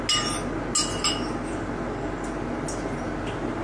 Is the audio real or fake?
real